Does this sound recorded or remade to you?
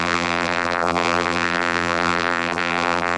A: remade